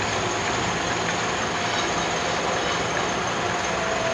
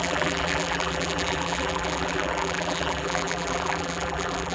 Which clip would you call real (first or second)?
first